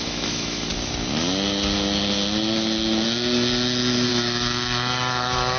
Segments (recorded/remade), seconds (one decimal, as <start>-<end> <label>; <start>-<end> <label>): 0.0-0.7 remade; 0.7-4.1 recorded; 4.1-5.6 remade